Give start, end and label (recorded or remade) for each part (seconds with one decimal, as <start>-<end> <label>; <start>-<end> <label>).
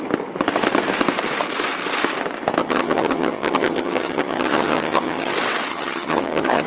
0.0-2.6 recorded; 2.6-5.3 remade; 5.3-5.7 recorded; 5.7-6.7 remade